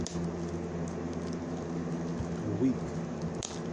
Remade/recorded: recorded